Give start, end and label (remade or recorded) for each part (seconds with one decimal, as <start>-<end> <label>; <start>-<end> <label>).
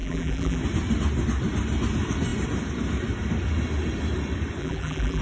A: 0.0-0.6 remade; 0.6-4.6 recorded; 4.6-5.2 remade